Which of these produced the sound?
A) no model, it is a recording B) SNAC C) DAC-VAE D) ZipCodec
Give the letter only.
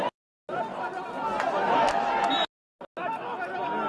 A